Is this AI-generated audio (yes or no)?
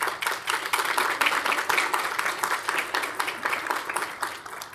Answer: no